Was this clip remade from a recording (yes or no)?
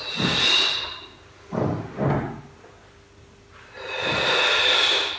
no